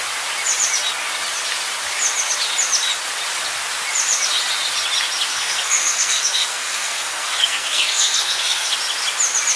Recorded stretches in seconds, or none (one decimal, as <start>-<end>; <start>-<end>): 0.0-5.3; 8.7-9.6